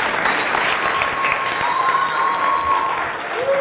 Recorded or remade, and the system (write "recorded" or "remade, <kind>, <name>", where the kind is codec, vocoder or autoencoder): recorded